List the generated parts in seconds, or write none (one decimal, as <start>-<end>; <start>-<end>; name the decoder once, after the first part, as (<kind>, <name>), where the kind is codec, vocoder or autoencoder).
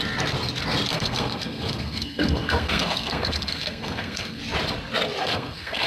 0.9-4.4 (codec, SNAC); 5.2-5.9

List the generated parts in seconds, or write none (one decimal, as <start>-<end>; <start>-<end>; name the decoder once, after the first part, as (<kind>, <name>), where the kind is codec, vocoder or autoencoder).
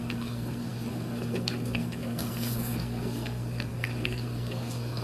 0.0-5.0 (codec, SNAC)